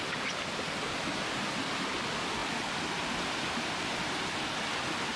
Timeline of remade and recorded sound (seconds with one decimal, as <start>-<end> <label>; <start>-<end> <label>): 0.0-5.2 recorded